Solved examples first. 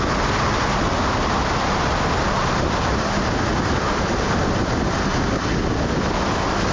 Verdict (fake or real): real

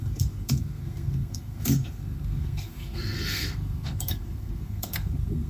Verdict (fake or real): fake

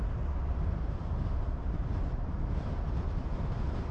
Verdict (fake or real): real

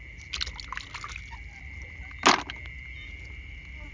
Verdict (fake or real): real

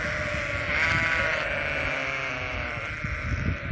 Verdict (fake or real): real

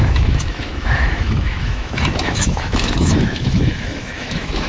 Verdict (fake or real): fake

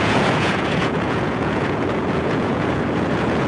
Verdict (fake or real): fake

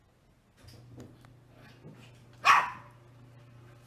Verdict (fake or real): real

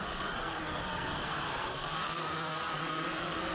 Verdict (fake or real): fake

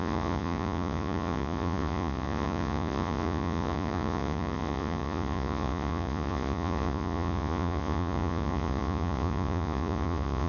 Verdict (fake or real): fake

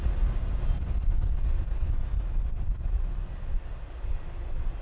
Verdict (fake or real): real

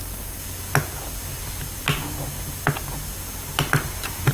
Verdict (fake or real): real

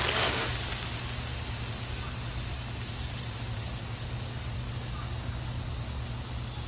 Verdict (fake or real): real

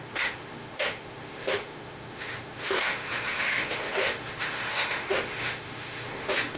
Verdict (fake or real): fake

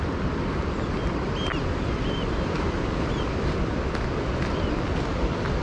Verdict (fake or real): real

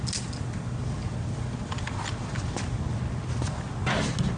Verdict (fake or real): real